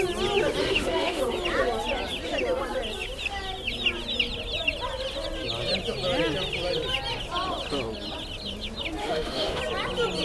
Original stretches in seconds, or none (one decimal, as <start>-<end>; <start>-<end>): 0.0-0.6; 1.2-9.0; 9.6-10.2